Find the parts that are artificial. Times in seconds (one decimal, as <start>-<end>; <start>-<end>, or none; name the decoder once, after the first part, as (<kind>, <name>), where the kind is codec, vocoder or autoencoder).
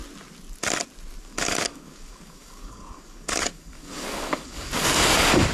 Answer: 1.2-5.5 (codec, DAC)